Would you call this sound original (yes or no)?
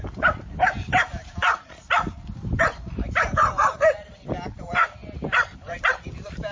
no